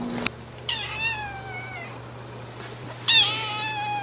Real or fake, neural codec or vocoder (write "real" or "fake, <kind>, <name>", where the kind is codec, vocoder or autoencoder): real